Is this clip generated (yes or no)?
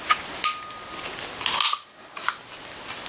no